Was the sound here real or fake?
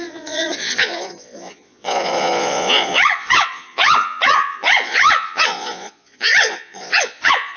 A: fake